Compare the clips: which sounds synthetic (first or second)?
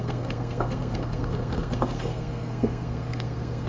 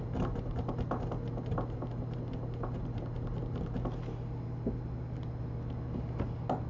first